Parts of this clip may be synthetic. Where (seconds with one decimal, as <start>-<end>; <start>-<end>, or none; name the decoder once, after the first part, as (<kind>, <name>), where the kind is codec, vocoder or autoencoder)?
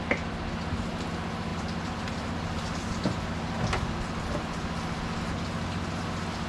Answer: none